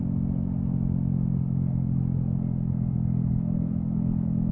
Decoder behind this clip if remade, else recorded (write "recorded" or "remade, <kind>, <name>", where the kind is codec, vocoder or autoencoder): recorded